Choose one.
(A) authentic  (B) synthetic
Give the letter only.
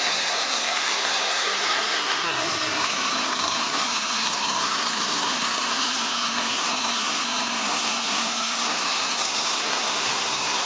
B